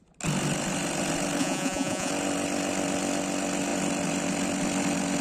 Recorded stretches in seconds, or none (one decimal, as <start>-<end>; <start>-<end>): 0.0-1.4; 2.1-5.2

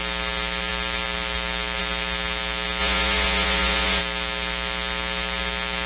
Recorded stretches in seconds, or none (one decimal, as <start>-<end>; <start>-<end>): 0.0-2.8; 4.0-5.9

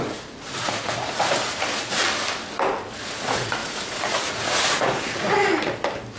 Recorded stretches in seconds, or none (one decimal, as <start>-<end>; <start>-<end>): 2.0-2.9; 5.5-6.2

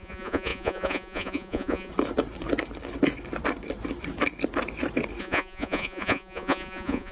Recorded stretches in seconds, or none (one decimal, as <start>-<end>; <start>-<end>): 1.9-5.2

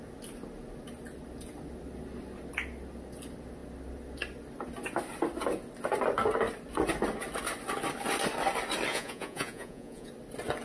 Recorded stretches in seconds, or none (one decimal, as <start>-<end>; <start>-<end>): 0.0-8.9; 10.1-10.6